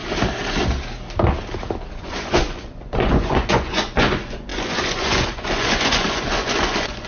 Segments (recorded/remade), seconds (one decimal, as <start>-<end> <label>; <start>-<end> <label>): 0.0-1.9 recorded; 1.9-7.1 remade